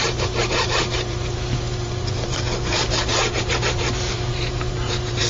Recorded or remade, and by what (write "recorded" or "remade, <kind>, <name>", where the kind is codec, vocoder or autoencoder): remade, vocoder, BigVGAN v2